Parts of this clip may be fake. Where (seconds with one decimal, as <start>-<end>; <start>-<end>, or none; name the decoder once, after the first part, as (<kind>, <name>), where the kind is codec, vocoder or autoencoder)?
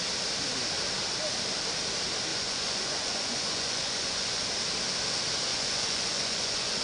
2.3-4.4 (vocoder, Vocos); 5.5-6.8